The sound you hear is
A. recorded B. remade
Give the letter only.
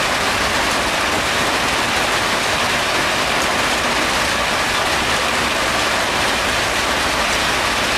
A